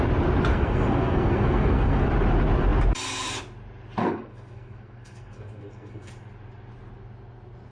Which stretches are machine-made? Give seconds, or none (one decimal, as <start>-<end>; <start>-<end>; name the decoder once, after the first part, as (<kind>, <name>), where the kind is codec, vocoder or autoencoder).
0.5-2.1 (codec, SNAC); 4.0-6.1